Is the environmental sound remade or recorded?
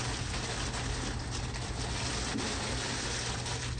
recorded